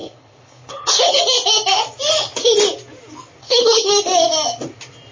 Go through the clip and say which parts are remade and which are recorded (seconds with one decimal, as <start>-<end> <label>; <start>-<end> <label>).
0.0-1.2 remade; 1.2-3.4 recorded; 3.4-3.9 remade; 3.9-5.1 recorded